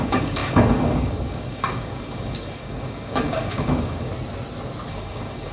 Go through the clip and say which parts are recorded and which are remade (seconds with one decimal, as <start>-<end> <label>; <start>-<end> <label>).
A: 0.0-4.1 remade; 4.1-4.9 recorded; 4.9-5.5 remade